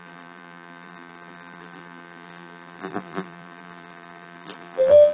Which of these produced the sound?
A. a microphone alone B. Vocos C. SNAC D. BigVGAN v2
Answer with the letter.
D